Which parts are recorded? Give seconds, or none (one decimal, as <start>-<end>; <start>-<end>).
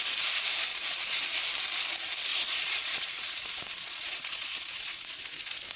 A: 0.0-0.7; 1.4-2.3